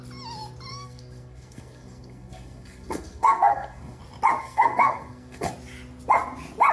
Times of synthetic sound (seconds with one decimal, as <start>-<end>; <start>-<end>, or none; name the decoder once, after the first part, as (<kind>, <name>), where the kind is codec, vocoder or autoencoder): 0.7-4.0 (codec, SNAC); 4.4-5.5